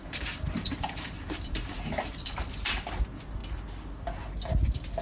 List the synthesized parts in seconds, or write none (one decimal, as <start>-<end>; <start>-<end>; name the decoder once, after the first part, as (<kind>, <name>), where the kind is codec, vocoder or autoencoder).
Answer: 0.0-3.0 (vocoder, BigVGAN v2)